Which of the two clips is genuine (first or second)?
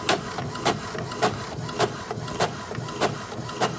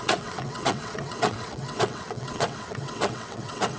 first